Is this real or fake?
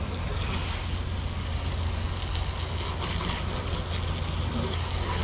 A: real